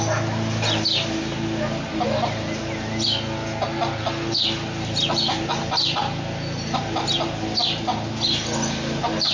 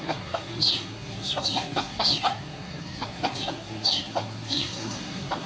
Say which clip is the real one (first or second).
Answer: first